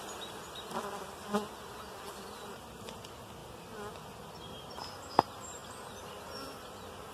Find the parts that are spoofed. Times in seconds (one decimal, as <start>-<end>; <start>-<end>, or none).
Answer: none